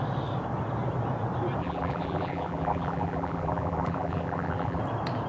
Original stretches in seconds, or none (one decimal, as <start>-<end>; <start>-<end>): 0.0-1.6; 4.8-5.3